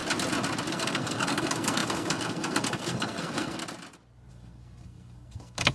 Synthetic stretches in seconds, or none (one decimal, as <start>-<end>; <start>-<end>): 0.7-3.6; 4.3-5.7